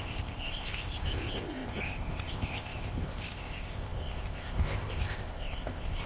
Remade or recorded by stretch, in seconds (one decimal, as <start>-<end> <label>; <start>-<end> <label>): 0.0-6.1 remade